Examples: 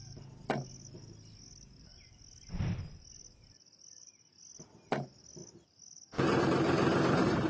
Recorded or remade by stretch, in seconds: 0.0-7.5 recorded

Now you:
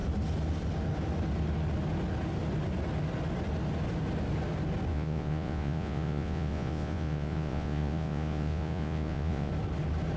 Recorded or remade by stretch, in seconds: 0.0-4.9 recorded; 4.9-9.5 remade; 9.5-10.2 recorded

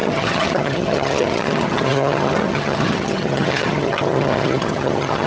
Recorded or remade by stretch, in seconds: 0.0-5.3 remade